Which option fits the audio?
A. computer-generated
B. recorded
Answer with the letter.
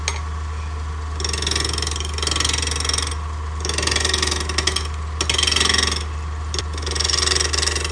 B